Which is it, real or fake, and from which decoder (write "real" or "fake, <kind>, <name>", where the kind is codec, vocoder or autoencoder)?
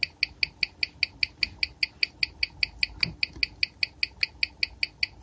real